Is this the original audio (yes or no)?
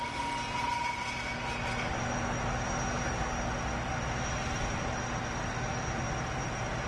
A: yes